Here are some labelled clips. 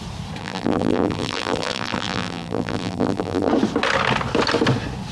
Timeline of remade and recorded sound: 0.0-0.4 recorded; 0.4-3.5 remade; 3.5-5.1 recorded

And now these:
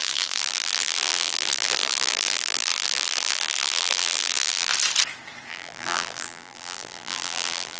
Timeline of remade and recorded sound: 0.0-4.7 remade; 4.7-5.5 recorded; 5.5-7.8 remade

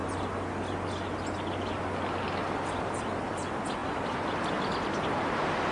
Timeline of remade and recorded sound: 0.0-2.8 recorded; 2.8-5.7 remade